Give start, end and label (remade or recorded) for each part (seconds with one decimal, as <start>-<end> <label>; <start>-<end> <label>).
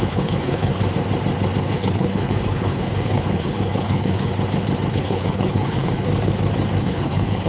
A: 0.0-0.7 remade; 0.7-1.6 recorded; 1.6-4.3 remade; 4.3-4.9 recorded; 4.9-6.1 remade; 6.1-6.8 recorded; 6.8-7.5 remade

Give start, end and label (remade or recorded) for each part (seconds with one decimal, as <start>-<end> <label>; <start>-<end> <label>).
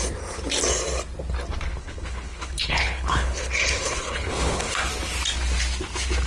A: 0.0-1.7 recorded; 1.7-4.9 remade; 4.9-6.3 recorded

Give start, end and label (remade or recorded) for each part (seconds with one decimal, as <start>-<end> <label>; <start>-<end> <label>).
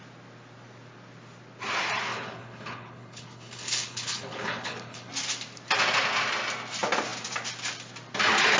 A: 0.0-2.1 recorded; 2.1-5.1 remade; 5.1-8.6 recorded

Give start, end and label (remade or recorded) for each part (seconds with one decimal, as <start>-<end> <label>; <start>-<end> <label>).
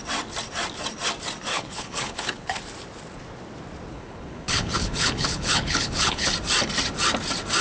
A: 0.0-1.5 recorded; 1.5-2.6 remade; 2.6-3.9 recorded; 3.9-6.3 remade; 6.3-7.6 recorded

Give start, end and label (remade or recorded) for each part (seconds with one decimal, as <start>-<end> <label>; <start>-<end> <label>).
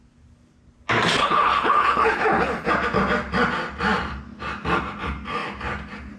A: 0.0-1.2 recorded; 1.2-2.7 remade; 2.7-6.2 recorded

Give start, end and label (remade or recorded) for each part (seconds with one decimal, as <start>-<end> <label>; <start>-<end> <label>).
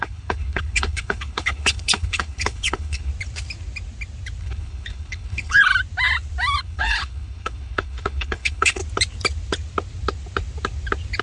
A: 0.0-3.1 remade; 3.1-4.4 recorded; 4.4-5.7 remade; 5.7-6.6 recorded; 6.6-8.8 remade; 8.8-11.2 recorded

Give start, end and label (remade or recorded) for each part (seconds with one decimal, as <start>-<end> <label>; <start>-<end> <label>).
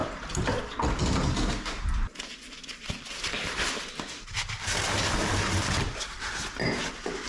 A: 0.0-7.3 recorded